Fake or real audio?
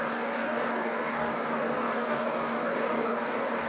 fake